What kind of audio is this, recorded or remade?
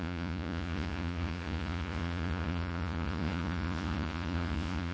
remade